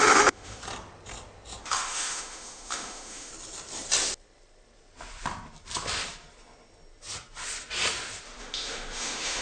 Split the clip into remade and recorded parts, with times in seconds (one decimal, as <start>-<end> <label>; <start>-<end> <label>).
0.0-0.6 remade; 0.6-1.6 recorded; 1.6-3.3 remade; 3.3-8.4 recorded; 8.4-9.4 remade